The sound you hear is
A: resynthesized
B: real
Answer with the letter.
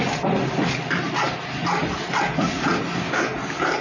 B